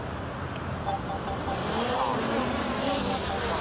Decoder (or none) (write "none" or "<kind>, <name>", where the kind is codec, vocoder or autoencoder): none